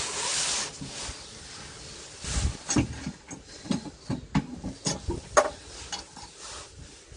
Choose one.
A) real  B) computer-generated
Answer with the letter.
A